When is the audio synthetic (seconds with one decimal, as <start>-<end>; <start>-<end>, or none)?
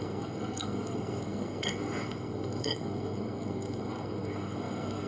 0.0-5.1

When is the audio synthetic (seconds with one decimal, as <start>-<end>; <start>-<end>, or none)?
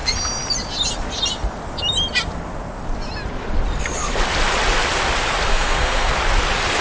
5.5-6.1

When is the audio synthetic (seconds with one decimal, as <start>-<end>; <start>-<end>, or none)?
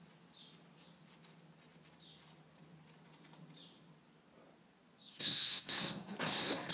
5.0-6.7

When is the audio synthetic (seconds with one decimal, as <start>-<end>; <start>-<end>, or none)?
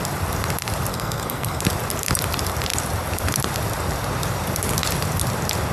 0.9-1.6